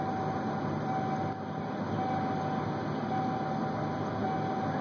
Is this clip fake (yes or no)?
no